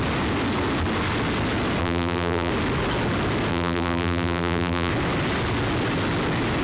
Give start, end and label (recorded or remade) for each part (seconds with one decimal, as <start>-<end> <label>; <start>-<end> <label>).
0.0-1.8 recorded; 1.8-2.5 remade; 2.5-3.5 recorded; 3.5-4.9 remade; 4.9-6.6 recorded